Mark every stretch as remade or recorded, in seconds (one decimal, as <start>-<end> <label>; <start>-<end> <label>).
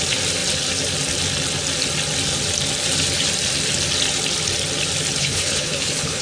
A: 0.0-5.2 recorded; 5.2-6.2 remade